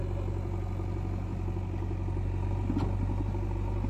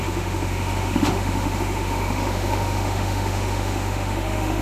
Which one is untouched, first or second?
first